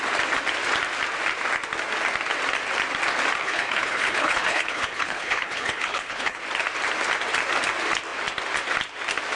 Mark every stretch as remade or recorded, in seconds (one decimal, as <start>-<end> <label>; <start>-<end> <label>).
0.0-3.4 recorded; 3.4-6.4 remade; 6.4-9.4 recorded